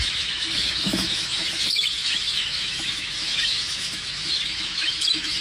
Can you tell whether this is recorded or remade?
remade